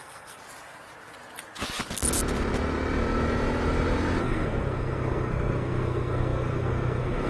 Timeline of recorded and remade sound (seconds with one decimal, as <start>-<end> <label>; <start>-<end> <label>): 0.0-0.4 remade; 0.4-4.2 recorded; 4.2-7.3 remade